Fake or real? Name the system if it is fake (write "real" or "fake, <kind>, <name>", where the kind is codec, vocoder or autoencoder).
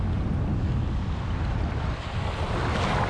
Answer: real